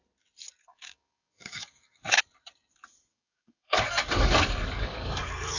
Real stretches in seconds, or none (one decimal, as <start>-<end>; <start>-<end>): 0.0-0.6; 2.2-3.1